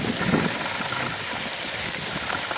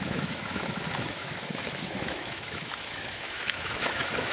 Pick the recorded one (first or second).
first